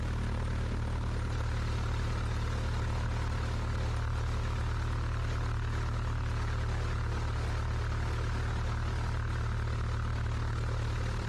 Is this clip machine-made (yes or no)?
no